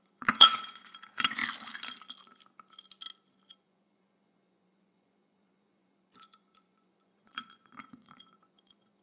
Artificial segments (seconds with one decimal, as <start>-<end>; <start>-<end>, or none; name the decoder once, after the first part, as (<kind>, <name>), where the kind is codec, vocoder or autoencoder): 0.0-1.4 (vocoder, Vocos); 3.5-9.0